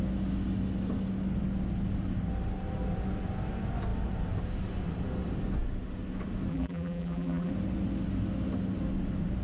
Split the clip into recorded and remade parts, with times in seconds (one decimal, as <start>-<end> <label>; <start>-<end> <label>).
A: 0.0-6.5 recorded; 6.5-7.5 remade; 7.5-9.4 recorded